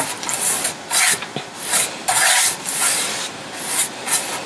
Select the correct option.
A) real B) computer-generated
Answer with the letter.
A